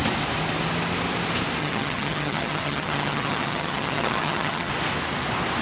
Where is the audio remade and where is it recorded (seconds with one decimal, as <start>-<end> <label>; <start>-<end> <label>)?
0.0-1.6 recorded; 1.6-4.7 remade; 4.7-5.6 recorded